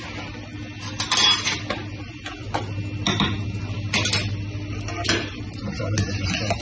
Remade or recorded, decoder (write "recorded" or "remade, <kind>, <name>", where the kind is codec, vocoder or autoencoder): recorded